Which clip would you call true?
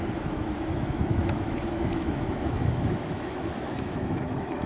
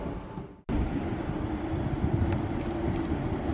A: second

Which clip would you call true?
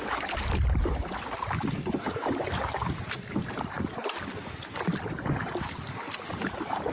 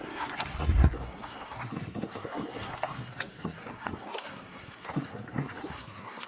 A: first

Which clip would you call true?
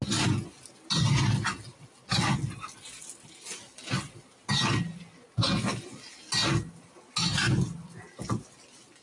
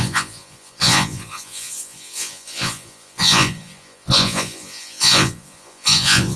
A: first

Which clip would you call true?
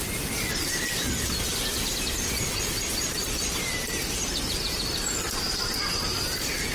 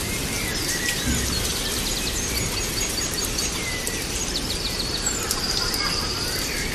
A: second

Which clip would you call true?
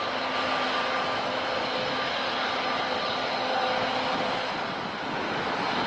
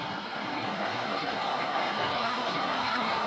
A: first